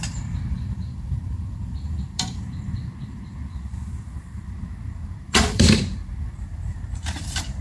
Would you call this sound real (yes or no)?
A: no